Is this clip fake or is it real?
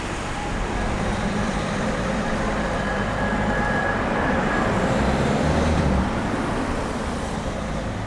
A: fake